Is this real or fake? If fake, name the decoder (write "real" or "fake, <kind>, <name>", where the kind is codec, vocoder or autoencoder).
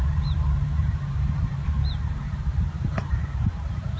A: fake, vocoder, BigVGAN v2